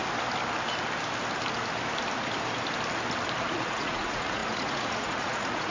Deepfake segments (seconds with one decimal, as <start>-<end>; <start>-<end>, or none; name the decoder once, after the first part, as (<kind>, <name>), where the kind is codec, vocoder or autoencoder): 3.4-5.7 (vocoder, Vocos)

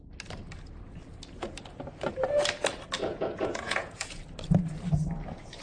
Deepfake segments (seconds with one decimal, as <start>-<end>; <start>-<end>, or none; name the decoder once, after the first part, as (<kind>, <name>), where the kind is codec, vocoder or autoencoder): 3.0-4.2 (vocoder, Vocos)

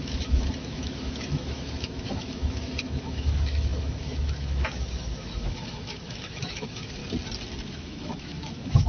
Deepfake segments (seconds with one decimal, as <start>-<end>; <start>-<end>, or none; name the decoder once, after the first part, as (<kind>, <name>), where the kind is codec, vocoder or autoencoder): 0.0-7.0 (autoencoder, DAC-VAE); 7.7-8.9

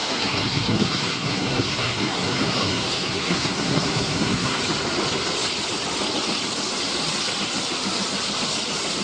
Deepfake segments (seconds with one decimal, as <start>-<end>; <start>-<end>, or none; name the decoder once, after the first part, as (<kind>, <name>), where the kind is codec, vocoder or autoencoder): 0.0-4.6 (codec, SNAC)

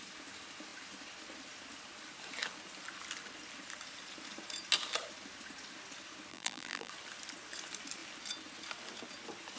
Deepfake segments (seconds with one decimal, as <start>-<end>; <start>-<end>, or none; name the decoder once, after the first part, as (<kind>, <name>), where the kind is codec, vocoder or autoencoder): 6.3-6.9 (vocoder, BigVGAN v2)